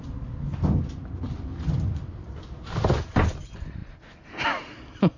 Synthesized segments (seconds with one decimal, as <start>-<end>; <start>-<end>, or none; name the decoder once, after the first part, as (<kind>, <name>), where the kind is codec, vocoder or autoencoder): none